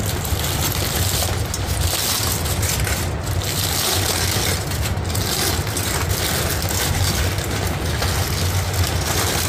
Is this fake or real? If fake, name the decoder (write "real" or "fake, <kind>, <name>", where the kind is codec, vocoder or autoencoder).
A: real